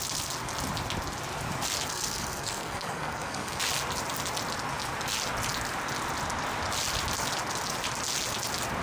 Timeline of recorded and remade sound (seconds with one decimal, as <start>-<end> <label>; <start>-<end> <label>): 0.0-1.9 recorded; 1.9-3.6 remade; 3.6-8.8 recorded